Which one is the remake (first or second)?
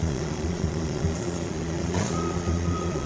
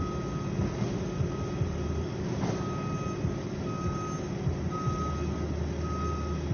first